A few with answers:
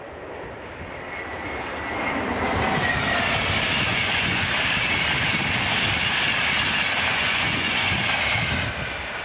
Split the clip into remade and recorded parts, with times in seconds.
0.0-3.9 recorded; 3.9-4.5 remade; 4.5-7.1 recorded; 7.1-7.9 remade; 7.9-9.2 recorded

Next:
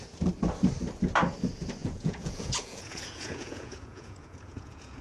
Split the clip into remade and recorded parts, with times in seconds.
0.0-1.8 recorded; 1.8-5.0 remade

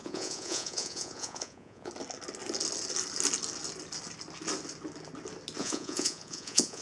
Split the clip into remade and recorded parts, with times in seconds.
0.0-1.9 remade; 1.9-5.6 recorded; 5.6-6.8 remade

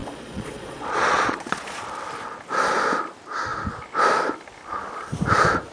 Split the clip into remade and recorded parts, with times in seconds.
0.0-1.8 remade; 1.8-5.7 recorded

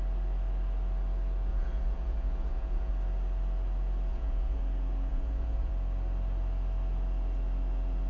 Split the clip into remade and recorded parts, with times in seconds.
0.0-1.5 recorded; 1.5-2.9 remade; 2.9-4.1 recorded; 4.1-4.6 remade; 4.6-5.1 recorded; 5.1-5.7 remade; 5.7-8.1 recorded

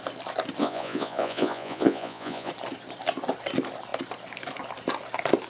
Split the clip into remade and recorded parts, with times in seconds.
0.0-0.6 recorded; 0.6-2.5 remade; 2.5-5.5 recorded